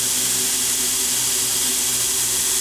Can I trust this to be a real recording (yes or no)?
yes